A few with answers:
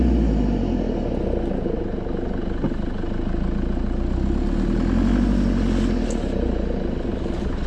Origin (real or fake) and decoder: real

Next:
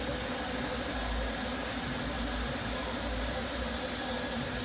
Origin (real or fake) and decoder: real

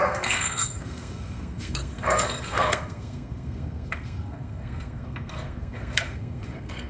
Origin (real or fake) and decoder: fake, codec, SNAC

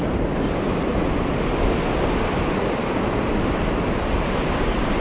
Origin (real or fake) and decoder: real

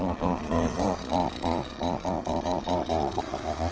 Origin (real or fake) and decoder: fake, vocoder, Vocos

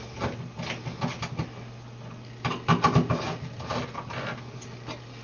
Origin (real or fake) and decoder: real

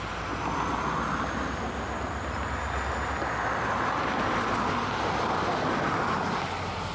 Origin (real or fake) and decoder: real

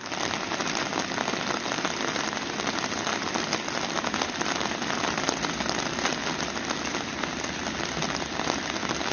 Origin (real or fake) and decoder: real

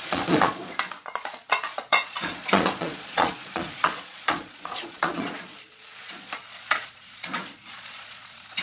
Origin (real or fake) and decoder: fake, vocoder, Vocos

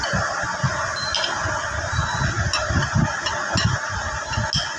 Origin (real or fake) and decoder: real